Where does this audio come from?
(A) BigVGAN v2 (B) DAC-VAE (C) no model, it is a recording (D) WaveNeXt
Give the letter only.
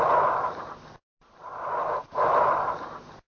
C